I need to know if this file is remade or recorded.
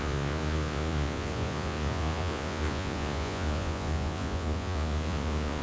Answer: remade